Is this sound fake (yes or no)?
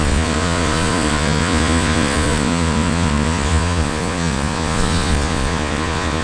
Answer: yes